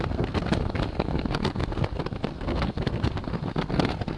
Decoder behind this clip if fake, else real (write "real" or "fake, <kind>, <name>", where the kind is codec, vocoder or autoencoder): fake, codec, SNAC